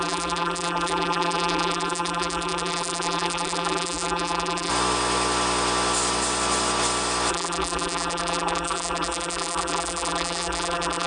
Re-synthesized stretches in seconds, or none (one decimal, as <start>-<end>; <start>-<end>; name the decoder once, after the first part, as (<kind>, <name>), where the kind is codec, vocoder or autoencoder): 0.0-4.7 (vocoder, BigVGAN v2); 7.3-11.1